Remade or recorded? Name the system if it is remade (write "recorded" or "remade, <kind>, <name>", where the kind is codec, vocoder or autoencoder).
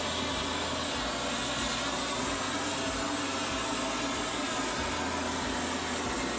recorded